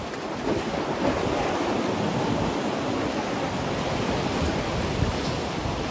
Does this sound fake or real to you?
real